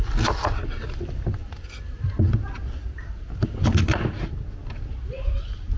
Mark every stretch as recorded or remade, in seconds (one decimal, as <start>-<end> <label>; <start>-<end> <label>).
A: 0.0-5.8 recorded